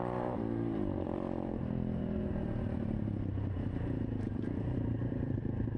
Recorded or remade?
remade